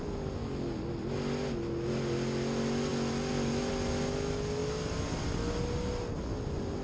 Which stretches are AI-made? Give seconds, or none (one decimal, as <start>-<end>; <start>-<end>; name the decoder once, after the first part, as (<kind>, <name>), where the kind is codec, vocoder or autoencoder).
none